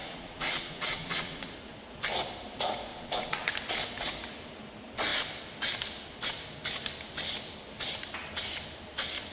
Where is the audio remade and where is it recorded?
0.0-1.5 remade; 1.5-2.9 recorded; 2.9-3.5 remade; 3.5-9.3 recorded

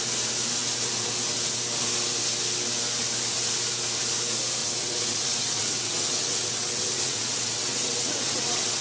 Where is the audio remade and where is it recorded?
0.0-4.6 recorded; 4.6-8.8 remade

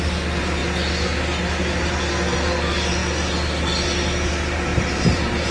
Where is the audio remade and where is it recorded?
0.0-4.7 recorded; 4.7-5.5 remade